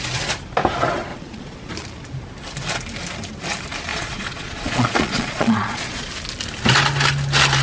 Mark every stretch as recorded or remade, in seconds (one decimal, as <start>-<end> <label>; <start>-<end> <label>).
0.0-1.1 recorded; 1.1-1.7 remade; 1.7-3.9 recorded; 3.9-6.1 remade; 6.1-7.6 recorded